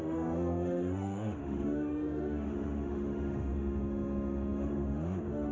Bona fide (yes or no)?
no